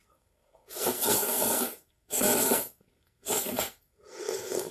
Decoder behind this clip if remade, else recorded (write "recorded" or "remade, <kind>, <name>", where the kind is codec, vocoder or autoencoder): remade, codec, SNAC